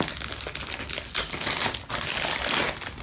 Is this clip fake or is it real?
real